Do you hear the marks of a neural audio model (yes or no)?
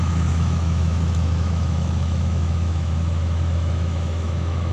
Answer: yes